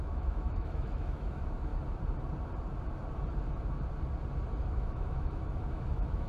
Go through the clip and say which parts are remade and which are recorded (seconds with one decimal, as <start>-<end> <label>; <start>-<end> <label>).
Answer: 0.0-1.7 remade; 1.7-4.6 recorded; 4.6-6.3 remade